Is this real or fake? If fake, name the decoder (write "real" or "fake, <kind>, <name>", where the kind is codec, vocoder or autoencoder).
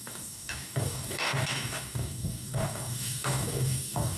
fake, codec, DAC